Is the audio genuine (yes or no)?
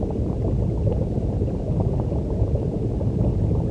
yes